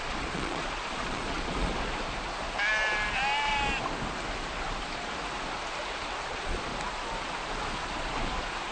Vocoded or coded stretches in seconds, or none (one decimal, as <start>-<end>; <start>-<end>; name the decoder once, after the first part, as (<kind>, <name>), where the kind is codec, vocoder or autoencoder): 0.0-1.7 (vocoder, Vocos); 6.3-6.7